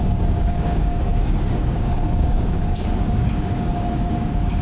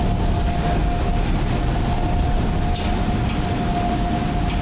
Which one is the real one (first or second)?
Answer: second